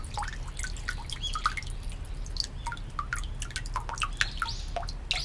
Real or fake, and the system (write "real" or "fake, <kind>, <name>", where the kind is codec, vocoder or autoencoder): real